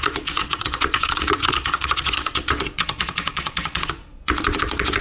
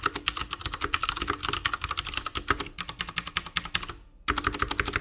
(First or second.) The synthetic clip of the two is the first